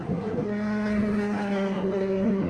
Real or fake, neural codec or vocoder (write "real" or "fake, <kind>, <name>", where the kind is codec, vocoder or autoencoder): fake, codec, SNAC